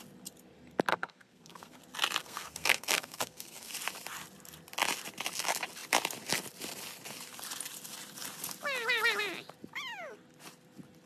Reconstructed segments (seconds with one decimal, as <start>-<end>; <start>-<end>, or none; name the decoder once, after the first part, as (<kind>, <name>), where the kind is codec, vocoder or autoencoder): 0.9-1.8 (codec, SNAC); 2.2-3.7